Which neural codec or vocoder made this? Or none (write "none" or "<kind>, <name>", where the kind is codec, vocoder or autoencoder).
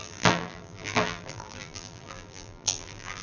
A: vocoder, BigVGAN v2